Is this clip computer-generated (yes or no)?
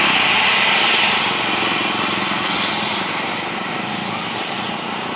no